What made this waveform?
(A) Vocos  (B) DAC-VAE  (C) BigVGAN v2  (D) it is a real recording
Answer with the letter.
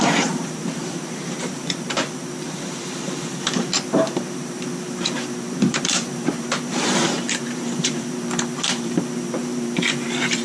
C